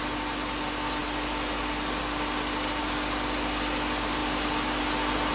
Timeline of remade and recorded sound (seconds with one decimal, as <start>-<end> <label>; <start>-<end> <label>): 0.0-5.3 recorded